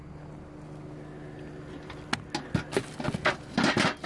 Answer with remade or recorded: recorded